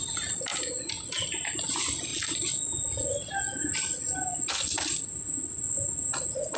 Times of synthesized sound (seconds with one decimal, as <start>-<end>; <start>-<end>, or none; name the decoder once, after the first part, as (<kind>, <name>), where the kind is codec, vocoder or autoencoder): none